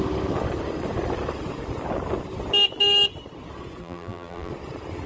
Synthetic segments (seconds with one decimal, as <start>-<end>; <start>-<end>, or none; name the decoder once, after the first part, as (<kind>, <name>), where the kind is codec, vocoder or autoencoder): 3.8-4.5 (vocoder, BigVGAN v2)